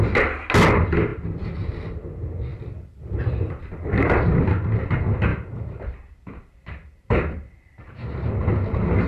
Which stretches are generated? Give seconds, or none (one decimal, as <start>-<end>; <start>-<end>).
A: 1.1-1.8; 2.5-4.1; 5.3-8.5